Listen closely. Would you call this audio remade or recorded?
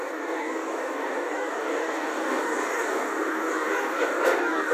remade